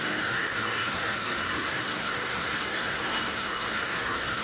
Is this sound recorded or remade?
remade